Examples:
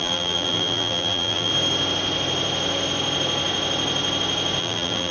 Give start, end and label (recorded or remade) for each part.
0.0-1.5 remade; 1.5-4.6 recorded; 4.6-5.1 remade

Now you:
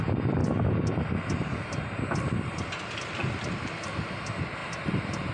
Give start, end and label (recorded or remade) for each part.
0.0-5.3 recorded

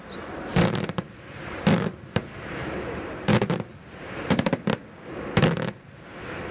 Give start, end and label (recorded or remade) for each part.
0.0-0.5 recorded; 0.5-4.4 remade; 4.4-6.5 recorded

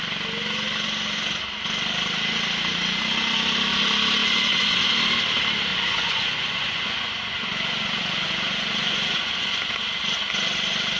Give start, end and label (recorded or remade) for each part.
0.0-4.2 recorded; 4.2-4.9 remade; 4.9-5.7 recorded; 5.7-9.7 remade; 9.7-11.0 recorded